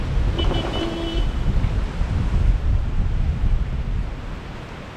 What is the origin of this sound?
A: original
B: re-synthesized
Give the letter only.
A